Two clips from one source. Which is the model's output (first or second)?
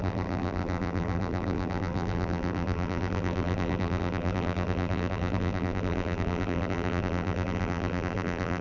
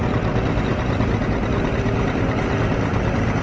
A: first